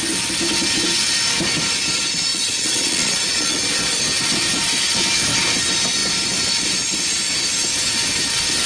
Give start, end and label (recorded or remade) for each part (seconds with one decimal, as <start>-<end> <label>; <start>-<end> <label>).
0.0-2.3 recorded; 2.3-3.6 remade; 3.6-8.7 recorded